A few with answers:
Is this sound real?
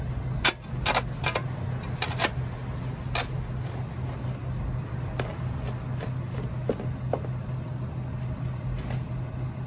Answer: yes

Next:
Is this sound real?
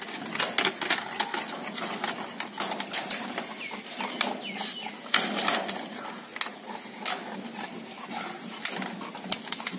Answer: yes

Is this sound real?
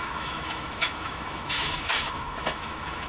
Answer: no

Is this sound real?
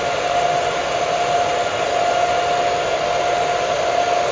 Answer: yes